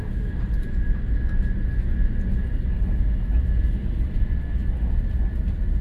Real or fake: real